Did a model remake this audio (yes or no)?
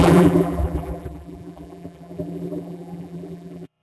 yes